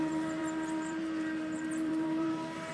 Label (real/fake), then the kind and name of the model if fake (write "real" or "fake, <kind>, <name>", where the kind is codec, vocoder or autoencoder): fake, vocoder, BigVGAN v2